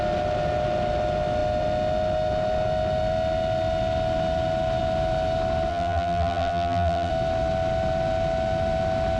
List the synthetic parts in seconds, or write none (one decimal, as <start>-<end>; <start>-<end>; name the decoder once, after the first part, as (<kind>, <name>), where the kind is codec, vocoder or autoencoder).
5.7-7.1 (vocoder, BigVGAN v2)